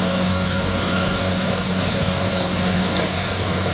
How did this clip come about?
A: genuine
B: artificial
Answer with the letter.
B